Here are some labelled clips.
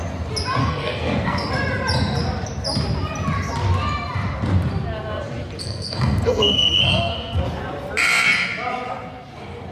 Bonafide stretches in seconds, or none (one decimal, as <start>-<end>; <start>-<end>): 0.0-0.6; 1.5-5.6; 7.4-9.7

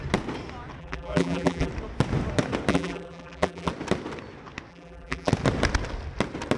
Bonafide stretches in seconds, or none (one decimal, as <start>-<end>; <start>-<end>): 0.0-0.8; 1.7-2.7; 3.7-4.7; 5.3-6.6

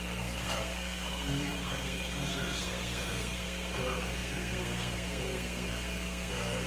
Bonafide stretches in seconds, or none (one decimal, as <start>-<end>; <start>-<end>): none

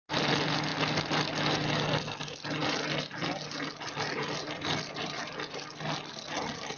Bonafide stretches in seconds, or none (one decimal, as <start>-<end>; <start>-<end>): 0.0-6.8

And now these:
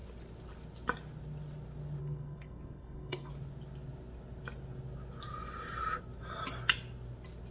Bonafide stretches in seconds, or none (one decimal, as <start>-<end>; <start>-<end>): 0.0-2.0; 3.3-7.5

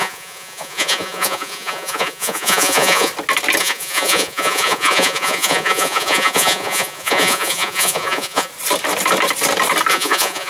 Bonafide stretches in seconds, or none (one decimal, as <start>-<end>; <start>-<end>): 3.1-3.6; 8.5-9.9

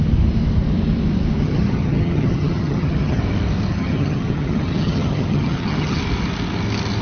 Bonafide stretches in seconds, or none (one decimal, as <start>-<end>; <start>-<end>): 0.0-1.4; 3.2-3.7; 6.0-7.0